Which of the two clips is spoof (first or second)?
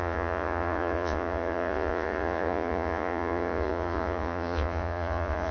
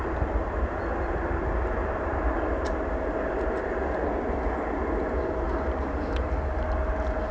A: first